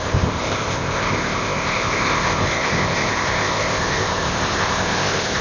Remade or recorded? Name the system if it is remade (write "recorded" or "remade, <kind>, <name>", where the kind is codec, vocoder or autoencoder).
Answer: remade, codec, ZipCodec